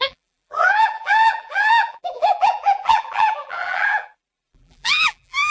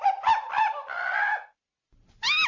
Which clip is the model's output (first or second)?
first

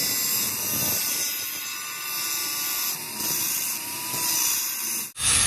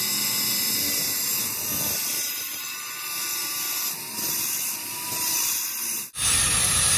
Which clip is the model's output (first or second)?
second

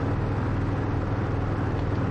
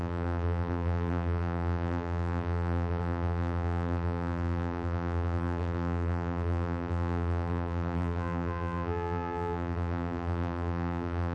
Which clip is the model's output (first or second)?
second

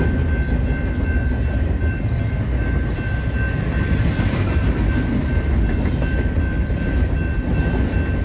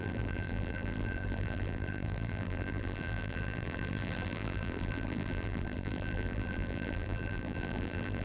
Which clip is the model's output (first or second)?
second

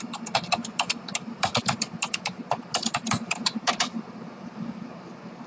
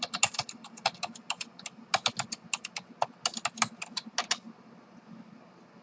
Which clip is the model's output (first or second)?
first